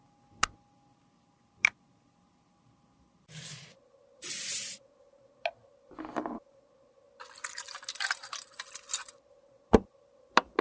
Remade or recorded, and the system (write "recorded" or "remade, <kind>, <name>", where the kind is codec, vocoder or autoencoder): recorded